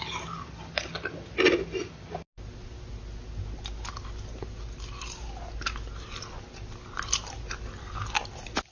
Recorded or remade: recorded